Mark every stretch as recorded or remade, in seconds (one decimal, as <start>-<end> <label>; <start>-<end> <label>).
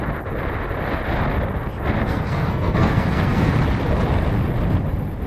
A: 0.0-2.0 recorded; 2.0-3.5 remade; 3.5-5.3 recorded